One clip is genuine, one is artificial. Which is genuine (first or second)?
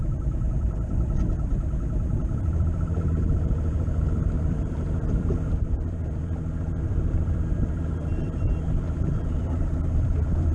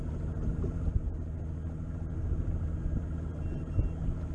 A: second